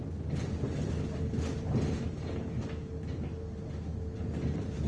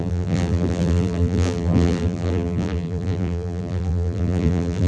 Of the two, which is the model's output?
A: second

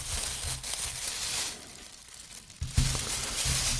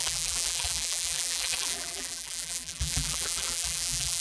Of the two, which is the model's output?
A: second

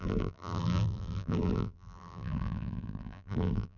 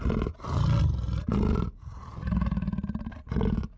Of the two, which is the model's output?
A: first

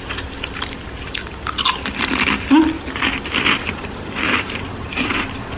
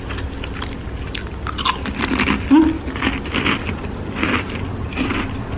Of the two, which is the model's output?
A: first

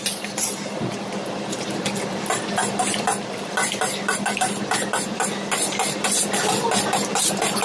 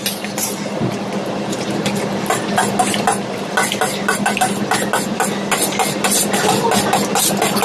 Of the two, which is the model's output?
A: first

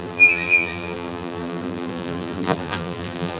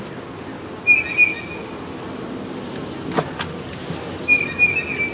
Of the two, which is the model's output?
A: first